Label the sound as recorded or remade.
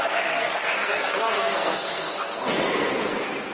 remade